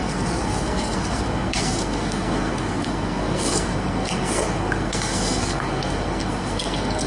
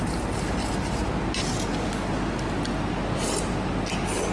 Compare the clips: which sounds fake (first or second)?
first